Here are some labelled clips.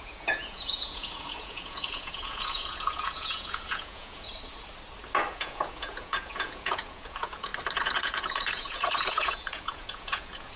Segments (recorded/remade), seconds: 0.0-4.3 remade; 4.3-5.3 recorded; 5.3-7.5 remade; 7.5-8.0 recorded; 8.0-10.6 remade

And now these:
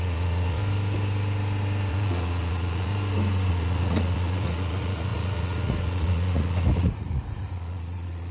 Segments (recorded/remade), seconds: 0.0-0.6 remade; 0.6-1.9 recorded; 1.9-2.9 remade; 2.9-3.5 recorded; 3.5-8.3 remade

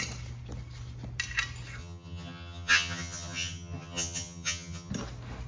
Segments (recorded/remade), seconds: 0.0-1.8 recorded; 1.8-4.9 remade; 4.9-5.5 recorded